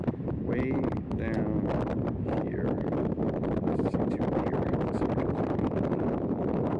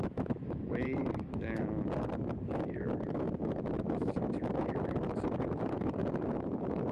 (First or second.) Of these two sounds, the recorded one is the first